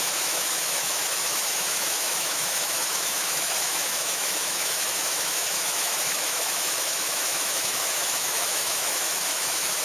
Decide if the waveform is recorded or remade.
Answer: remade